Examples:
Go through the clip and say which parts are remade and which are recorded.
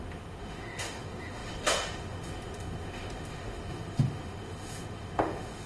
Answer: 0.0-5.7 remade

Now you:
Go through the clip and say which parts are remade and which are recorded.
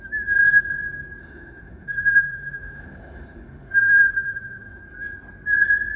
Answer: 0.0-1.2 recorded; 1.2-4.8 remade; 4.8-6.0 recorded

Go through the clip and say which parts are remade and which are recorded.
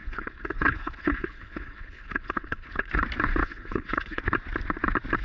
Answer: 0.0-2.9 remade; 2.9-3.4 recorded; 3.4-4.2 remade; 4.2-5.2 recorded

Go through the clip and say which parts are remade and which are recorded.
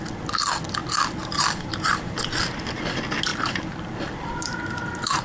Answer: 0.0-1.2 recorded; 1.2-2.2 remade; 2.2-3.3 recorded; 3.3-5.2 remade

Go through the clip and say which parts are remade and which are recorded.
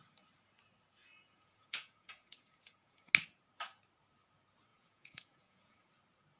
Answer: 0.0-1.0 recorded; 1.0-3.1 remade; 3.1-4.7 recorded; 4.7-5.9 remade; 5.9-6.4 recorded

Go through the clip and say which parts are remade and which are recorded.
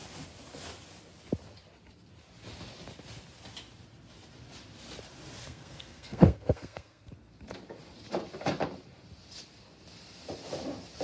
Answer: 0.0-5.4 recorded; 5.4-7.1 remade; 7.1-11.0 recorded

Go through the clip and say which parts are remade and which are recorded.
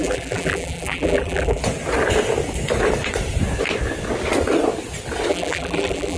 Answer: 0.0-1.6 remade; 1.6-5.3 recorded; 5.3-6.2 remade